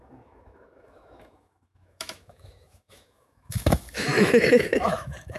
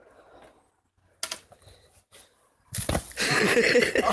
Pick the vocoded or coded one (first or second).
first